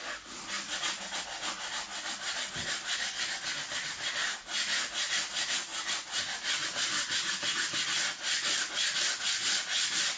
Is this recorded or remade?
recorded